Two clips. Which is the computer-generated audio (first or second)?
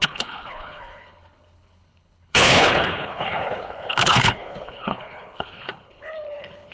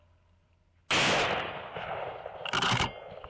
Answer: first